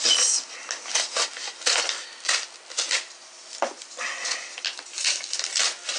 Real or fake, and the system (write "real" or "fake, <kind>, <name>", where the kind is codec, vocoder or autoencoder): real